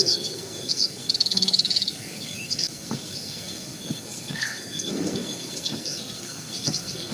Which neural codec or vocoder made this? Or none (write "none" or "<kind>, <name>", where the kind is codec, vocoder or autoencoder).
codec, SNAC